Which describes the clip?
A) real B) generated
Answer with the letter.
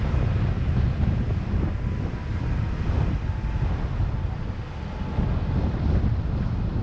A